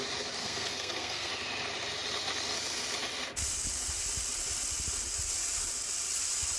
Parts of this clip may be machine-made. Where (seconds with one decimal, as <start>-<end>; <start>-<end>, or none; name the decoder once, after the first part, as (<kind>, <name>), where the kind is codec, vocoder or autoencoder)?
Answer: 0.4-1.3 (codec, SNAC)